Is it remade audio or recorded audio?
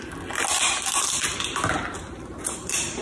recorded